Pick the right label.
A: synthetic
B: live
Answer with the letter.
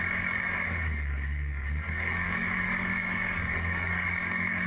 A